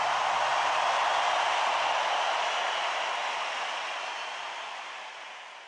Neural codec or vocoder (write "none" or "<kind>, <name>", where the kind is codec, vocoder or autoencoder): none